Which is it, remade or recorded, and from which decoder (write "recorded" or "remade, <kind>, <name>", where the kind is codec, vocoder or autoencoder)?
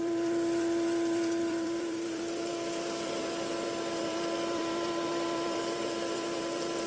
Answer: remade, vocoder, BigVGAN v2